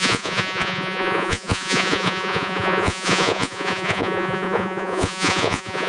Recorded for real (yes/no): no